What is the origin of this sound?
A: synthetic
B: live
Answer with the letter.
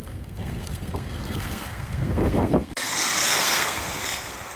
A